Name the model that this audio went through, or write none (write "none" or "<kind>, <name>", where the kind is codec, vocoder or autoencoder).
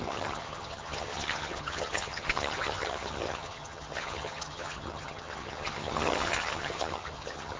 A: vocoder, HiFi-GAN